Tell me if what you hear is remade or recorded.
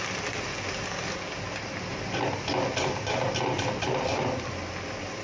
recorded